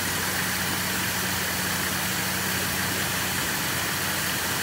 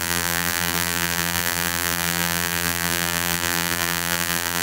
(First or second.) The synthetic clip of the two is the second